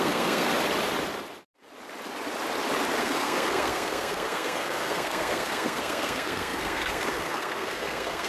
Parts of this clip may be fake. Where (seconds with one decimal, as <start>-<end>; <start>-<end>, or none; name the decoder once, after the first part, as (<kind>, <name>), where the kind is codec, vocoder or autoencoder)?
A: 0.0-0.5 (codec, SNAC); 3.0-8.3